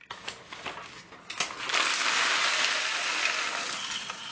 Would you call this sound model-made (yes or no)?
no